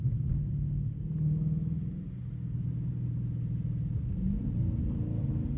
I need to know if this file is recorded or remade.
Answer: recorded